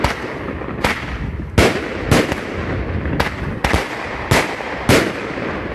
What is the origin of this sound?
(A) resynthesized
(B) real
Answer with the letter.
B